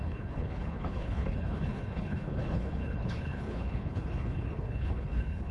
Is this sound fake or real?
fake